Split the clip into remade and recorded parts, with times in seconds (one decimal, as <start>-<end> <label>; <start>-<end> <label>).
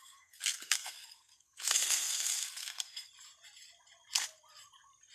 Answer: 0.0-3.1 remade; 3.1-5.1 recorded